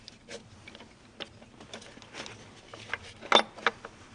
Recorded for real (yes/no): yes